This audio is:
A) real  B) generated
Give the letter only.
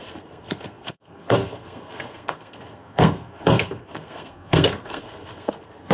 B